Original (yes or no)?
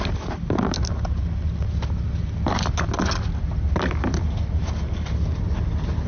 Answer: yes